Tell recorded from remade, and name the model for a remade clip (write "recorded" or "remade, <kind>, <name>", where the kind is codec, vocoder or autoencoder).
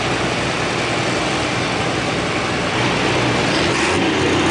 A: recorded